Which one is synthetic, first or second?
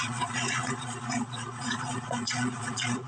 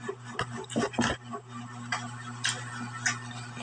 first